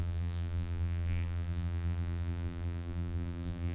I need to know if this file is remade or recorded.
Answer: remade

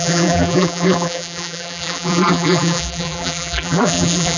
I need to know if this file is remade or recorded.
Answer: remade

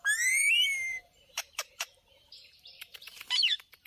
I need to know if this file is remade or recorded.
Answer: remade